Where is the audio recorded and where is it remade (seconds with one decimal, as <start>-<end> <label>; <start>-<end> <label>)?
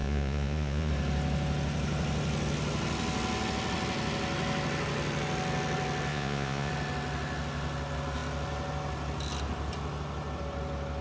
0.0-0.9 remade; 0.9-6.1 recorded; 6.1-6.7 remade; 6.7-11.0 recorded